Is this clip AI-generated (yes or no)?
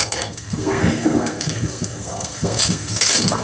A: yes